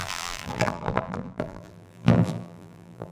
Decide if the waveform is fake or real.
fake